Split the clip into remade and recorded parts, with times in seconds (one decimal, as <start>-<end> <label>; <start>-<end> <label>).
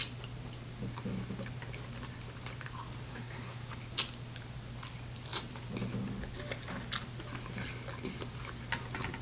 0.0-3.1 recorded; 3.1-3.7 remade; 3.7-9.2 recorded